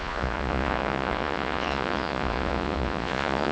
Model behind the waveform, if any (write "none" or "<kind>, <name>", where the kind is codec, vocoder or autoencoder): vocoder, Vocos